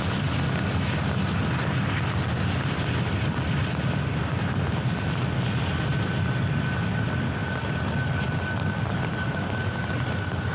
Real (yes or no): yes